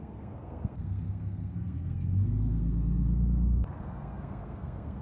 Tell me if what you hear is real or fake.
fake